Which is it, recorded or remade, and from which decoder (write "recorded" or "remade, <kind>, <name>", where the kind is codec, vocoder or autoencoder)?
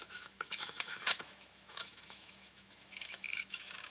remade, autoencoder, DAC-VAE